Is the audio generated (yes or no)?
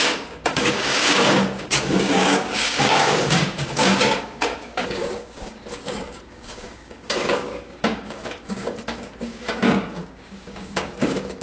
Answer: yes